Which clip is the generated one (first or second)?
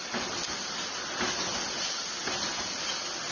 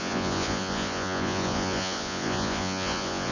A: second